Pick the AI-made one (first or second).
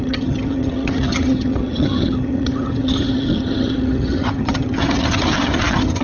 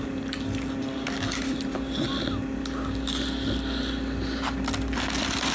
first